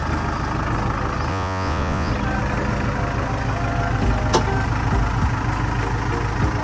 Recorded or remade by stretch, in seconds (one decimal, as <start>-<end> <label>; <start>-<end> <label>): 0.0-1.3 recorded; 1.3-2.1 remade; 2.1-6.6 recorded